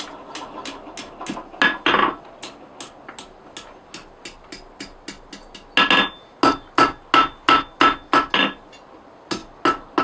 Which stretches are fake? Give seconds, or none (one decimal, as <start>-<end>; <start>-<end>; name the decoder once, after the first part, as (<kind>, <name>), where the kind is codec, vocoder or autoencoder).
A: none